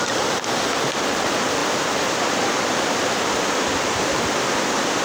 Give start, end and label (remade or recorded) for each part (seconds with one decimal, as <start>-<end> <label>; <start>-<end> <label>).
0.0-5.0 recorded